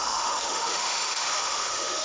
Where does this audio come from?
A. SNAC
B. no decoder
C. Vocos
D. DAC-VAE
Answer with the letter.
D